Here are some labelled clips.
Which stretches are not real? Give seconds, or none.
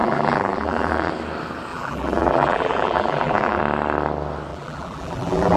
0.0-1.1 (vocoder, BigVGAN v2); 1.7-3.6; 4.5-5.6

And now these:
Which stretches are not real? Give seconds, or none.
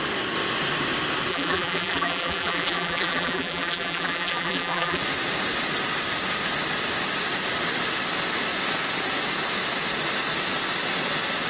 1.3-5.0 (vocoder, BigVGAN v2)